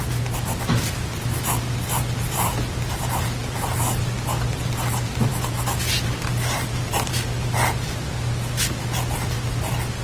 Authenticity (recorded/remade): recorded